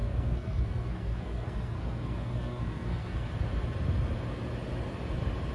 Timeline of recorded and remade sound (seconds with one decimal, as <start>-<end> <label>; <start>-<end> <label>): 0.0-3.3 remade; 3.3-5.5 recorded